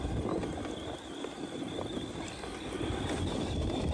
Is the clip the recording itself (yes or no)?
yes